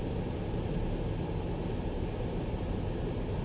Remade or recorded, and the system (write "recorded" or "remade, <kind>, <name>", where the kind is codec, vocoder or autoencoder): recorded